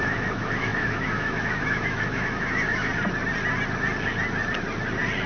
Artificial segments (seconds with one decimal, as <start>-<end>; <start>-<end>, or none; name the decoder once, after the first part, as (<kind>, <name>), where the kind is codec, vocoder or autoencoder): 0.0-2.9 (autoencoder, DAC-VAE)